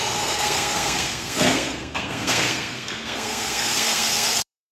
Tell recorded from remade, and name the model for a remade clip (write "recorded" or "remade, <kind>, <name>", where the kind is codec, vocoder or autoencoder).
remade, codec, SNAC